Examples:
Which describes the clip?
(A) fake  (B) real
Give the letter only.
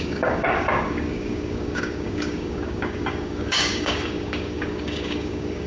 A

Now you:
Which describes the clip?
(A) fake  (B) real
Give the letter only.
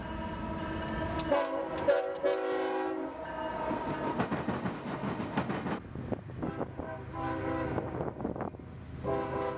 B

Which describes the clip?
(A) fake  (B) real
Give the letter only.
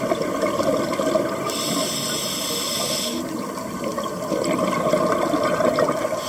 B